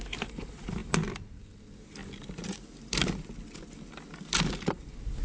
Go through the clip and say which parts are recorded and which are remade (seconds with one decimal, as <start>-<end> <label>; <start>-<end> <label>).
0.0-5.2 recorded